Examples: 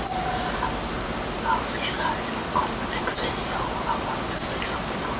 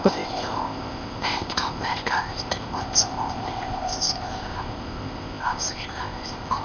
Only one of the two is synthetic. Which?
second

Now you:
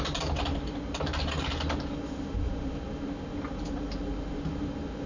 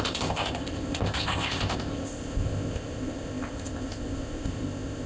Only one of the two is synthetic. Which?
second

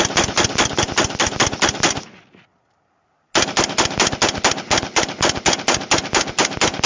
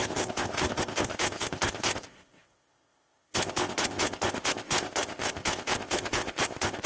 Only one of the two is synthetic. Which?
second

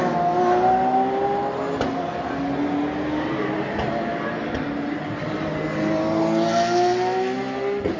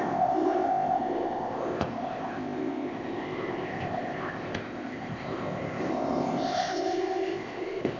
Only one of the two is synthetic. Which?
second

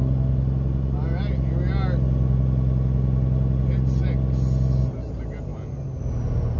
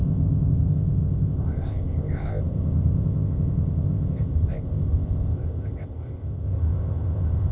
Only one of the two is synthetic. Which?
second